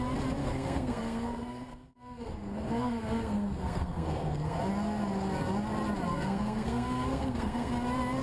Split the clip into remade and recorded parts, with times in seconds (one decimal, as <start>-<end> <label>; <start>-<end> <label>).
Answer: 0.0-0.4 recorded; 0.4-4.6 remade; 4.6-6.1 recorded; 6.1-7.7 remade; 7.7-8.2 recorded

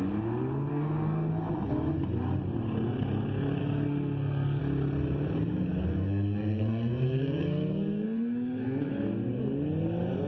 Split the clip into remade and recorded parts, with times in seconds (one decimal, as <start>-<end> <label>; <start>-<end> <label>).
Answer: 0.0-0.7 recorded; 0.7-1.3 remade; 1.3-3.6 recorded; 3.6-4.6 remade; 4.6-5.9 recorded; 5.9-8.9 remade; 8.9-10.3 recorded

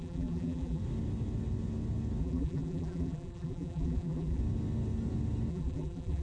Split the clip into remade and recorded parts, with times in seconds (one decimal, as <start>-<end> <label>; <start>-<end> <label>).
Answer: 0.0-0.8 remade; 0.8-2.2 recorded; 2.2-4.4 remade; 4.4-5.5 recorded; 5.5-6.2 remade

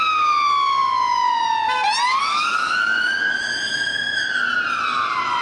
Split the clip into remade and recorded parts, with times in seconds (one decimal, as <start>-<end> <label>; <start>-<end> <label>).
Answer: 0.0-2.2 recorded; 2.2-4.4 remade; 4.4-5.4 recorded

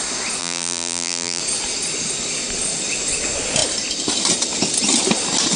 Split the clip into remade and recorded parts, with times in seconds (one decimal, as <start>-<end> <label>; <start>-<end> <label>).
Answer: 0.0-0.4 recorded; 0.4-1.4 remade; 1.4-5.6 recorded

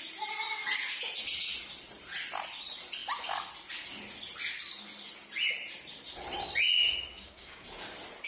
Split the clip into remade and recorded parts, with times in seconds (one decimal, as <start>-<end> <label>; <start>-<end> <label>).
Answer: 0.0-7.1 recorded; 7.1-7.7 remade; 7.7-8.3 recorded

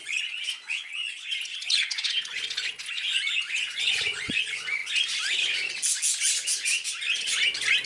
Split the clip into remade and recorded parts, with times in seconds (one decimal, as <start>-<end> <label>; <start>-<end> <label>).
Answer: 0.0-4.8 remade; 4.8-7.9 recorded